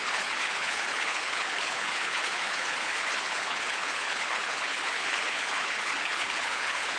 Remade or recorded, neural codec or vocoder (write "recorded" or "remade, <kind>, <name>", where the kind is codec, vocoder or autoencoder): remade, codec, HILCodec